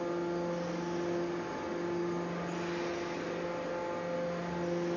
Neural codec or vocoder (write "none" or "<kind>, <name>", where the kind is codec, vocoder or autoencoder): none